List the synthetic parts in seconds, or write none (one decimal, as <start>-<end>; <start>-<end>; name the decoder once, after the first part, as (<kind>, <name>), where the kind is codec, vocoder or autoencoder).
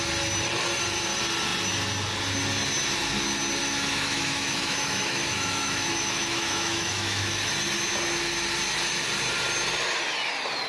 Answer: 3.6-7.5 (autoencoder, DAC-VAE)